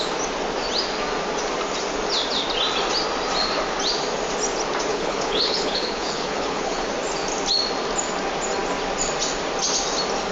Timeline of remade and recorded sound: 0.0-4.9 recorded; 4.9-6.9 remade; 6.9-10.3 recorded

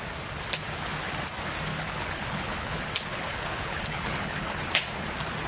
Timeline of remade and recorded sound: 0.0-1.7 recorded; 1.7-4.6 remade; 4.6-5.5 recorded

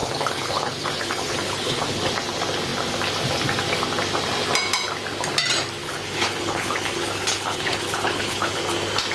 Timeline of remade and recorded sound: 0.0-2.1 remade; 2.1-5.8 recorded; 5.8-8.6 remade; 8.6-9.1 recorded

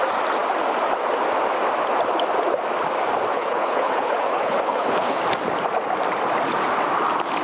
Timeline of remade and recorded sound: 0.0-3.3 recorded; 3.3-5.2 remade; 5.2-7.4 recorded